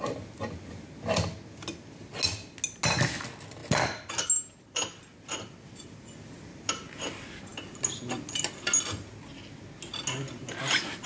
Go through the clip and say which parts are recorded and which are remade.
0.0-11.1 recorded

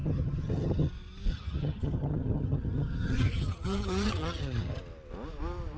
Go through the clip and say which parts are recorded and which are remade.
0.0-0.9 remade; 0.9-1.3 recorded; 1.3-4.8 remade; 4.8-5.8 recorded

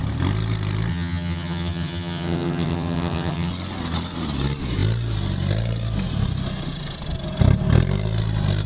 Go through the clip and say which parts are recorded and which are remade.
0.0-0.9 recorded; 0.9-3.5 remade; 3.5-8.7 recorded